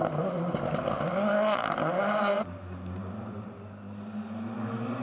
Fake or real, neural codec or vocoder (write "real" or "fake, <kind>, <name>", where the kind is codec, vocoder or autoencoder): real